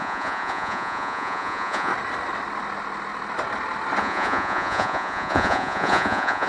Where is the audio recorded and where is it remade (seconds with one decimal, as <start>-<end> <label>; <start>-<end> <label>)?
0.0-1.9 remade; 1.9-4.0 recorded; 4.0-6.5 remade